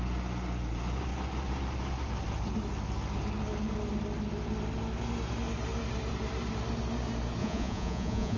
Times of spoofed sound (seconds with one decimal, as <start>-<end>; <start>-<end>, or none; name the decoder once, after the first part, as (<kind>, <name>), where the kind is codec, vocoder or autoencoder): 7.4-8.4 (vocoder, Vocos)